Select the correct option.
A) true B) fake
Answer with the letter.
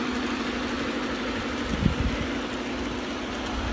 A